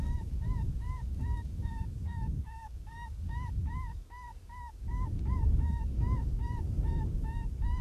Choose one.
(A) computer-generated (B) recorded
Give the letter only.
A